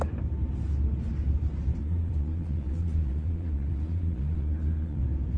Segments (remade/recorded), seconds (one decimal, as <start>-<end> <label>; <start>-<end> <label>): 0.0-1.8 recorded; 1.8-5.0 remade; 5.0-5.4 recorded